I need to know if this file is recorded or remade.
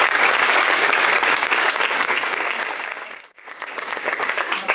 remade